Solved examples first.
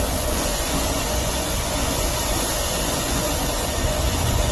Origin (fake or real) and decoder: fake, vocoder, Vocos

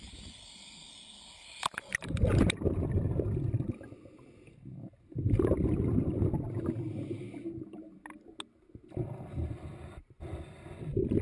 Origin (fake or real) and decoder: real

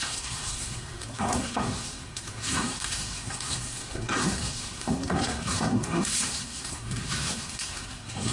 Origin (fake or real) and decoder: fake, codec, SNAC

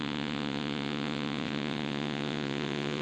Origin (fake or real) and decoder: fake, vocoder, WaveNeXt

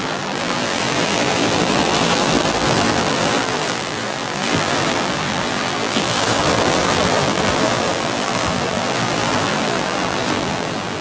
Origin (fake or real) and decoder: fake, vocoder, BigVGAN v2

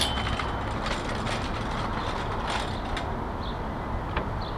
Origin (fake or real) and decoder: real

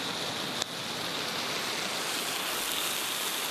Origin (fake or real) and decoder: real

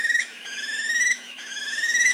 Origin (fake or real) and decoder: fake, autoencoder, DAC-VAE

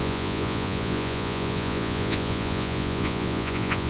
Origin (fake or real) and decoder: fake, vocoder, Vocos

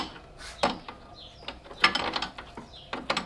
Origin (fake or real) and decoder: real